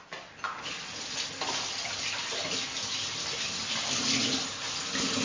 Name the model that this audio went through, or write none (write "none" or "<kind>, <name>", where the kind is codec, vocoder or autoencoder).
none